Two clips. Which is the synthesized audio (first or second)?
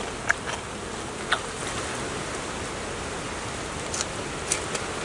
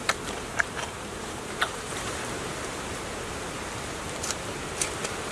second